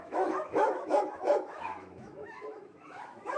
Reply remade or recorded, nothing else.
remade